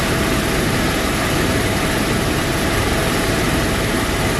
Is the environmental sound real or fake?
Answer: fake